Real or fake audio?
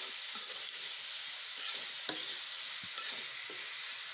real